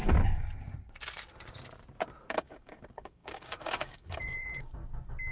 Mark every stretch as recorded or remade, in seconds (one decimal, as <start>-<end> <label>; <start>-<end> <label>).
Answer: 0.0-2.2 recorded; 2.2-4.8 remade; 4.8-5.3 recorded

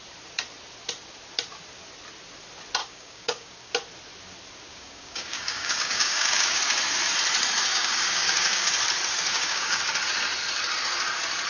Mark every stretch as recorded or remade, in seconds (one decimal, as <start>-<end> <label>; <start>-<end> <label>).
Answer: 0.0-2.8 recorded; 2.8-3.7 remade; 3.7-4.7 recorded; 4.7-6.6 remade; 6.6-7.7 recorded; 7.7-8.7 remade; 8.7-9.3 recorded; 9.3-9.8 remade; 9.8-11.5 recorded